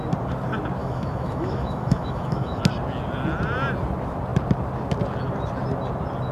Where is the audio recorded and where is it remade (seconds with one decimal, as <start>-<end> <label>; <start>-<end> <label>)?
0.0-0.8 recorded; 0.8-2.6 remade; 2.6-6.3 recorded